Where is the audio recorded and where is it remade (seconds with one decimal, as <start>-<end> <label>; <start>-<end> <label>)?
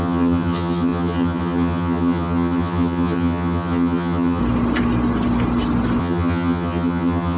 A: 0.0-4.4 remade; 4.4-6.0 recorded; 6.0-7.4 remade